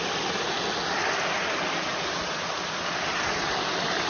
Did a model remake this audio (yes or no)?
no